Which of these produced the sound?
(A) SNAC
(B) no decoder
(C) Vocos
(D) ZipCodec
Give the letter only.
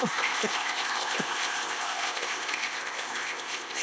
D